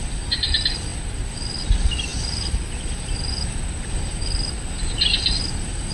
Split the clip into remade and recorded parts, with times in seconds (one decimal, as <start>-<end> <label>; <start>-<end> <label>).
0.0-5.9 recorded